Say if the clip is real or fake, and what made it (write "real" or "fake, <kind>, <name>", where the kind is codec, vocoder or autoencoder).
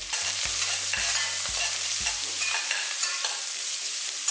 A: fake, vocoder, BigVGAN v2